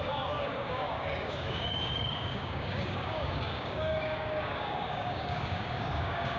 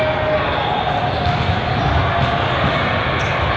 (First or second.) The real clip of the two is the second